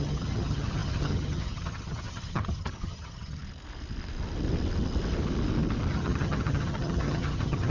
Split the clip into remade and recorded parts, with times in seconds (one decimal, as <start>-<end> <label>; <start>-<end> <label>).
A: 0.0-3.4 remade; 3.4-5.9 recorded; 5.9-7.7 remade